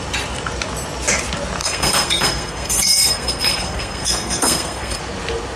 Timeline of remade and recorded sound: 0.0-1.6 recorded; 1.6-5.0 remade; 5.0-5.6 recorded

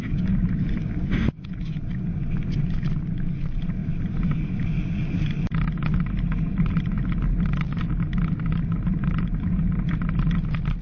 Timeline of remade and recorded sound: 0.0-10.8 recorded

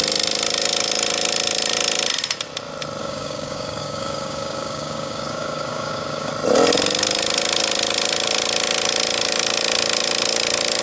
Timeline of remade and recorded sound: 0.0-3.0 recorded; 3.0-6.3 remade; 6.3-10.8 recorded

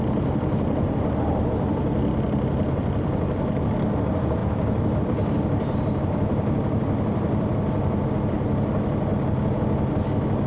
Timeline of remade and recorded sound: 0.0-4.4 recorded; 4.4-8.1 remade; 8.1-10.5 recorded

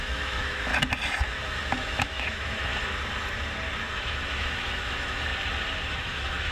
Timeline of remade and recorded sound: 0.0-0.7 remade; 0.7-1.4 recorded; 1.4-2.7 remade; 2.7-3.9 recorded; 3.9-5.3 remade; 5.3-5.9 recorded; 5.9-6.5 remade

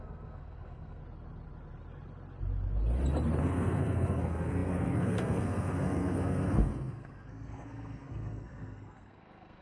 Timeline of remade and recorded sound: 0.0-1.0 remade; 1.0-3.4 recorded; 3.4-9.6 remade